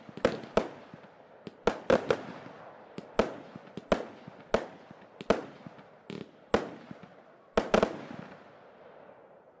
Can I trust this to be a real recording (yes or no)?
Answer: yes